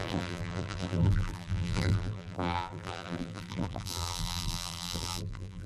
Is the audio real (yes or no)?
no